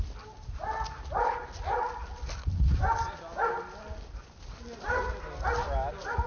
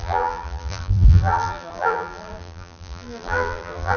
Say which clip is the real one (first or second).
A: first